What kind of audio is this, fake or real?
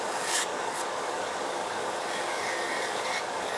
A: fake